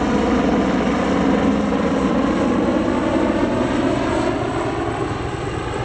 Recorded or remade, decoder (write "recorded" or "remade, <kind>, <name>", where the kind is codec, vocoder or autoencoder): recorded